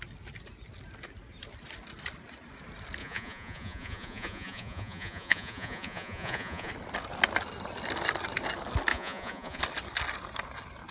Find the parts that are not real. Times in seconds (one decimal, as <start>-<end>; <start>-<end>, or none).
3.0-6.7; 8.9-9.6